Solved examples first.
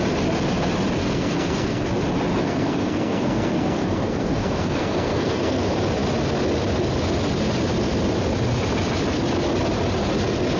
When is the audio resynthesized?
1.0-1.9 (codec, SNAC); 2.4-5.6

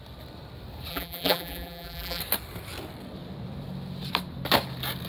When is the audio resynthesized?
0.9-2.2 (vocoder, BigVGAN v2)

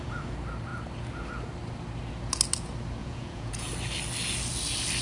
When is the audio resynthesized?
3.0-3.7 (vocoder, Vocos)